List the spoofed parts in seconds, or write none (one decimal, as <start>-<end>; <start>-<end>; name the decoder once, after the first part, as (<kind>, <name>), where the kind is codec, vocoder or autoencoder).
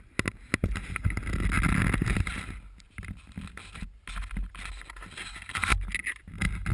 none